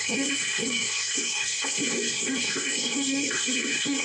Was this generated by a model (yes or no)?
yes